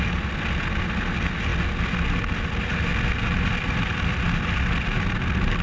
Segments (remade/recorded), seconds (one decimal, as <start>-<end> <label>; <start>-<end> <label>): 0.0-5.6 recorded